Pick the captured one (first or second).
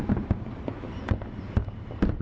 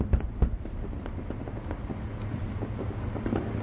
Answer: second